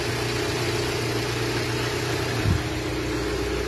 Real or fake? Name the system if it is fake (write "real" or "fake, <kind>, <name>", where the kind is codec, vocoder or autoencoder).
real